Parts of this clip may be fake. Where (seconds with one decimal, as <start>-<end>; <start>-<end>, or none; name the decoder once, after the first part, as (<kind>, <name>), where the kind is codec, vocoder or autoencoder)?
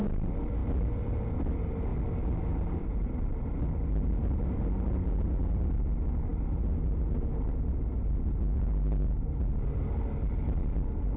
none